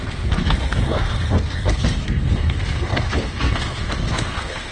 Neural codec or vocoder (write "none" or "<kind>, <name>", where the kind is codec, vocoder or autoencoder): codec, SNAC